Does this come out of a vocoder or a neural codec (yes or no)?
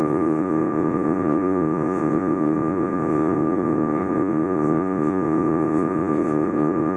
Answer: yes